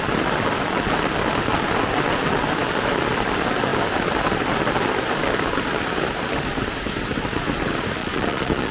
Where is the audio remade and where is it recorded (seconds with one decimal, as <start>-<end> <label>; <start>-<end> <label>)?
0.0-8.0 recorded; 8.0-8.7 remade